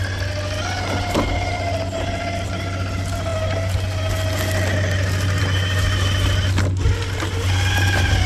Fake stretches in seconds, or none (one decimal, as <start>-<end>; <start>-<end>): none